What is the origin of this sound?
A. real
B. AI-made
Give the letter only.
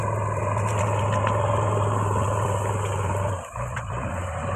A